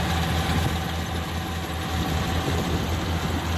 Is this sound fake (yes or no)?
no